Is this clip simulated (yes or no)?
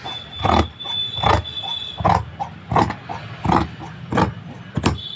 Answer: no